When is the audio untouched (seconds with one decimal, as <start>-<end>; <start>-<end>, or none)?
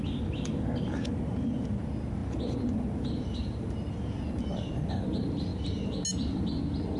0.9-1.8; 5.5-7.0